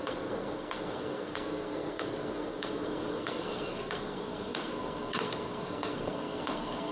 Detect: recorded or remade remade